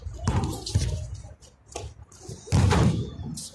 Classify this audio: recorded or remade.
recorded